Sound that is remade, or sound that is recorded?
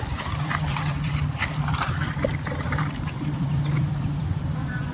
remade